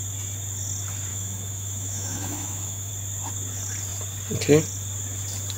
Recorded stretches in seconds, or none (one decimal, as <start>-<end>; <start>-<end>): 0.0-1.1; 2.9-5.6